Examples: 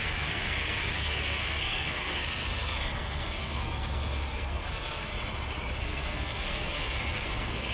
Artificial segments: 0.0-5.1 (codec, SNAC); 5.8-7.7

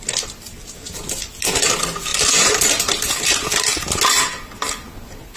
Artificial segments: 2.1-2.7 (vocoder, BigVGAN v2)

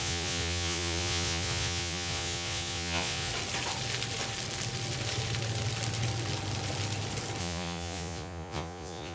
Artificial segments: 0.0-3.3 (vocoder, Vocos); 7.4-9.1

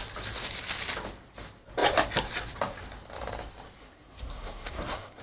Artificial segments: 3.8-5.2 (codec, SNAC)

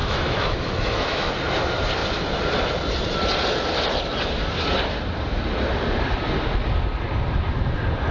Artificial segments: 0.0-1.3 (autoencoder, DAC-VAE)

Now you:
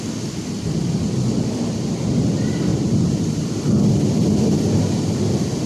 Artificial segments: 2.7-3.5 (vocoder, BigVGAN v2)